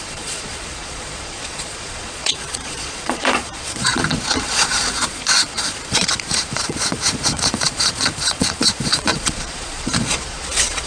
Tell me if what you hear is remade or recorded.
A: remade